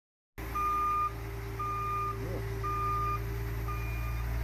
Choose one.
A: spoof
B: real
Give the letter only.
B